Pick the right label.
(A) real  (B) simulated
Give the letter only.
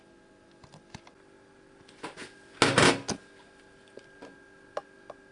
A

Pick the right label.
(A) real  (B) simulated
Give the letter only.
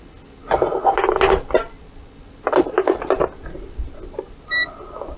A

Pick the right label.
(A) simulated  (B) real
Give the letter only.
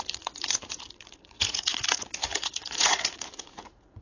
A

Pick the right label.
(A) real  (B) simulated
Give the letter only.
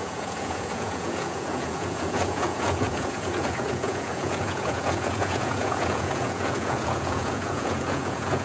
B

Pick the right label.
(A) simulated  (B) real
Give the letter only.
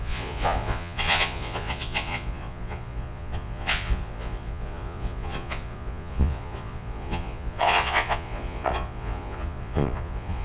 A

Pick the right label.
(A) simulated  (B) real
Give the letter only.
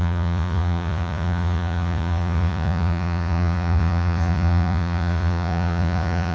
A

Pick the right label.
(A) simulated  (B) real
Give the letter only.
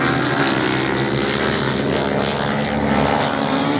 B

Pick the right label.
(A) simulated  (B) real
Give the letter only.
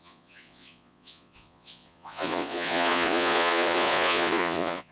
A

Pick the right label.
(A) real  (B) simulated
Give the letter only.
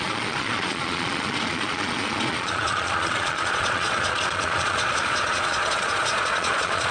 B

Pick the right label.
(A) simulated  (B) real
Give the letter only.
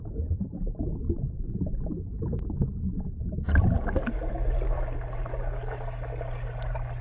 B